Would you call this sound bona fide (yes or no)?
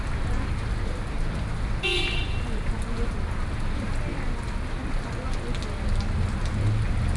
yes